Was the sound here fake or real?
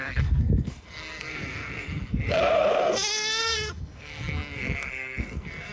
fake